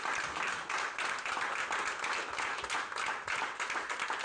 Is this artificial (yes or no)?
no